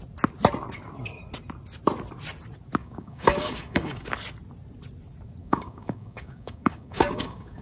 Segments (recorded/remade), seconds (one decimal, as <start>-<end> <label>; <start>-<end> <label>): 0.0-2.8 recorded; 2.8-4.1 remade; 4.1-5.4 recorded; 5.4-7.6 remade